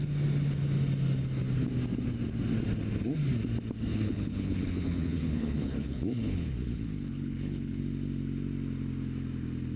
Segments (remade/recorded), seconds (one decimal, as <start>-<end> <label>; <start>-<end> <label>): 0.0-3.9 recorded; 3.9-7.8 remade; 7.8-9.8 recorded